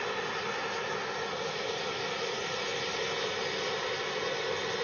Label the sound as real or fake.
real